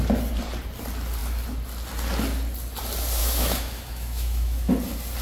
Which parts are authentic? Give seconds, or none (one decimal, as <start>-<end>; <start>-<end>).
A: 0.0-3.2; 4.7-5.2